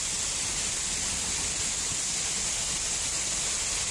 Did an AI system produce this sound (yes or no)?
no